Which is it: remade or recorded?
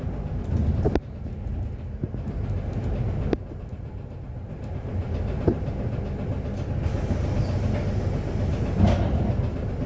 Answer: recorded